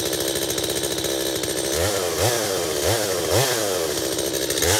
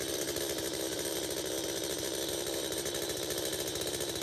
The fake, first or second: second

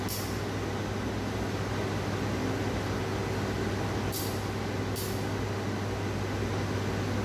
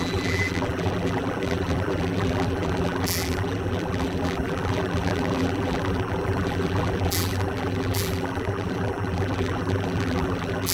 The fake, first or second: second